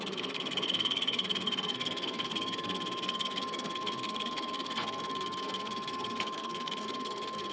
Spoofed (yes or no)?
yes